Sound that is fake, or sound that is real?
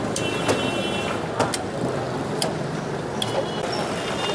real